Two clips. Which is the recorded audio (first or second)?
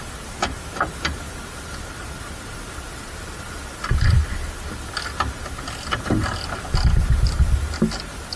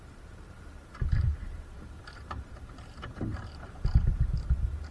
first